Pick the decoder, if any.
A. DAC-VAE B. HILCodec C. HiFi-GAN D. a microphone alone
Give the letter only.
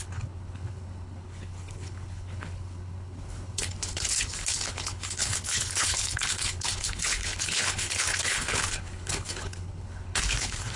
B